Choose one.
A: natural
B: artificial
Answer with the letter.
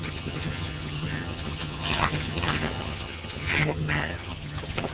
B